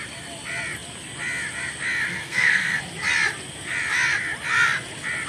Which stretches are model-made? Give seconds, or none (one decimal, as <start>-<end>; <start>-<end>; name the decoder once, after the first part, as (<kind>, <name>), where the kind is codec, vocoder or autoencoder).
2.1-2.8 (codec, SNAC)